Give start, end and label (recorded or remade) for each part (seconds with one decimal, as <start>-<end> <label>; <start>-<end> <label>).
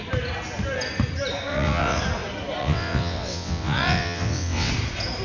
0.0-1.5 recorded; 1.5-2.0 remade; 2.0-2.6 recorded; 2.6-4.7 remade; 4.7-5.2 recorded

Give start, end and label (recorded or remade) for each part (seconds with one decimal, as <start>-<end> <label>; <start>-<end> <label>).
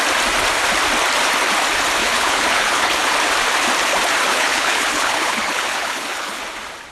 0.0-2.0 recorded; 2.0-2.9 remade; 2.9-4.3 recorded; 4.3-6.4 remade; 6.4-6.9 recorded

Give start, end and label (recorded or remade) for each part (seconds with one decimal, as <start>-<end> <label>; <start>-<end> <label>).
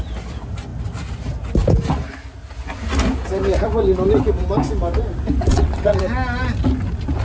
0.0-5.5 recorded; 5.5-6.0 remade; 6.0-7.2 recorded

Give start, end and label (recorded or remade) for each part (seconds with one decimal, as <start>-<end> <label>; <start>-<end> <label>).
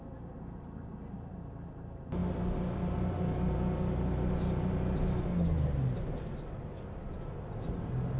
0.0-8.2 recorded